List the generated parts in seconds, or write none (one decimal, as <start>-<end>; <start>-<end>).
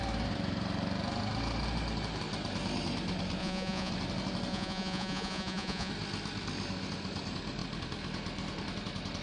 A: 3.4-3.9; 4.5-5.9